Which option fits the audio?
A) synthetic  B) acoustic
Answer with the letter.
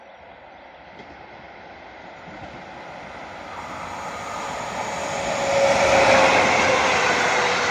B